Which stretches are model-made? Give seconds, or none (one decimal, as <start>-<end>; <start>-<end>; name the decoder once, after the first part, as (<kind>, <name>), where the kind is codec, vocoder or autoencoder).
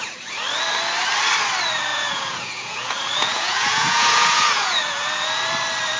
1.9-5.5 (vocoder, Vocos)